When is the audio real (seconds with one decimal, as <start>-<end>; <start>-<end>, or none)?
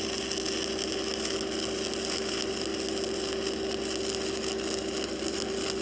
0.0-5.8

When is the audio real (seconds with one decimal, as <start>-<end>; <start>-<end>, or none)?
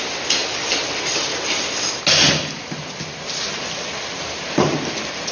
0.0-5.3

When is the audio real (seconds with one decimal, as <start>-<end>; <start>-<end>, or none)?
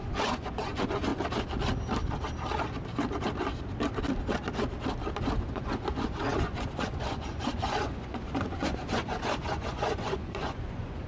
1.1-5.4